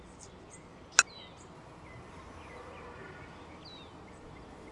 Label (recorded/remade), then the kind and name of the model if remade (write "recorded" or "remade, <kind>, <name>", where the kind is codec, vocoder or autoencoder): recorded